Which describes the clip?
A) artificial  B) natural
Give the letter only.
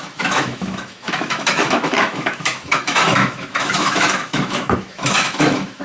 A